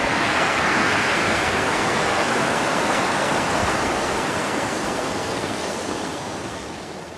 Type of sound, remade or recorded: remade